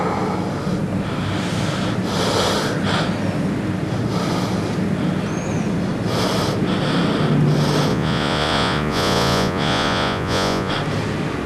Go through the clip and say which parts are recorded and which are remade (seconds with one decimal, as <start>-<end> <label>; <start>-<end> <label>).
0.0-7.9 recorded; 7.9-10.7 remade; 10.7-11.5 recorded